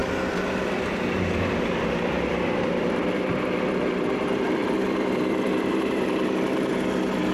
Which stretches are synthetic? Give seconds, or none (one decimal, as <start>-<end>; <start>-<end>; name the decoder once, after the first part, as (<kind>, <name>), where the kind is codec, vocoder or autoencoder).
0.0-7.3 (vocoder, BigVGAN v2)

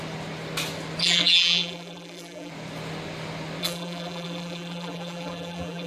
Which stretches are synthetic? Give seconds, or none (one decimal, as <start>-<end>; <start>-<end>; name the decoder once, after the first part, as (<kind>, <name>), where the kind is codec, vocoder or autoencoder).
1.0-2.5 (vocoder, BigVGAN v2); 3.6-5.9

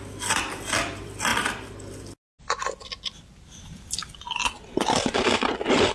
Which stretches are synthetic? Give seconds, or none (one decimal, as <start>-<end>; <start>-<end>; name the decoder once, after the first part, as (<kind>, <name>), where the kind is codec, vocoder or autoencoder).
0.0-1.3 (vocoder, BigVGAN v2); 2.4-4.0; 4.7-5.9

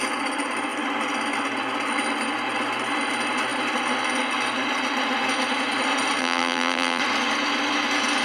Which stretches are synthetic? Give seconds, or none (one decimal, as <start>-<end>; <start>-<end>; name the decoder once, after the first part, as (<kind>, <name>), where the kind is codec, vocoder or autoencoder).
6.2-7.0 (vocoder, BigVGAN v2)

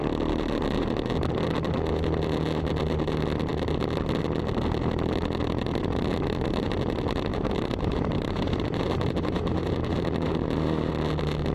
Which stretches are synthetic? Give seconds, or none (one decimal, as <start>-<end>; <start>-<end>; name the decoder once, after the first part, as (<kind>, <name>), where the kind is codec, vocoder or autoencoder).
7.3-10.9 (vocoder, BigVGAN v2)

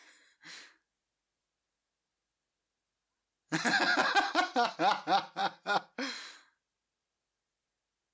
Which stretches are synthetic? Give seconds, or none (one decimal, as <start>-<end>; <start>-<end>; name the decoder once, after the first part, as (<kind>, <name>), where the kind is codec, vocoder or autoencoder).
5.4-7.2 (vocoder, BigVGAN v2)